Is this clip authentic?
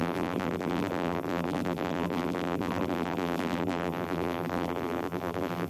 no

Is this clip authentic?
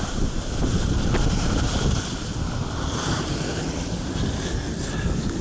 yes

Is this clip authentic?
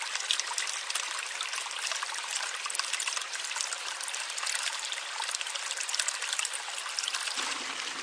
yes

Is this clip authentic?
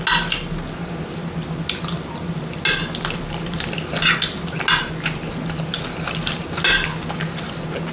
yes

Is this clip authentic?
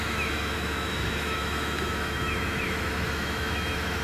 no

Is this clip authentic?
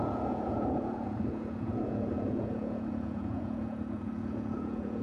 no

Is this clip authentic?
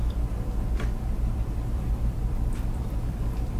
no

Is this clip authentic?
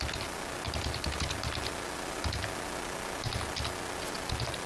yes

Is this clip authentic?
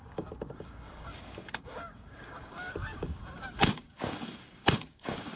no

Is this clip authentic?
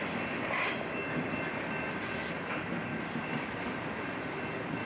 yes